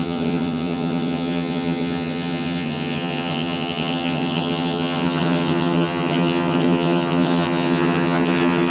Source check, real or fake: fake